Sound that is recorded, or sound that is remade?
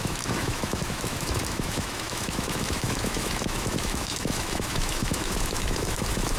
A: remade